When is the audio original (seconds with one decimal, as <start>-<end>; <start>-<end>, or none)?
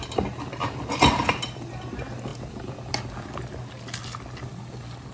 0.0-5.1